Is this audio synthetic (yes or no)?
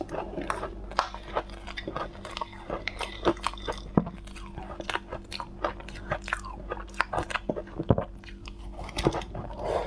no